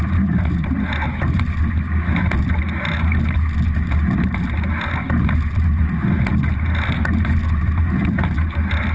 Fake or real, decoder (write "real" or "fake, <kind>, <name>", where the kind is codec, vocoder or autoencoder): real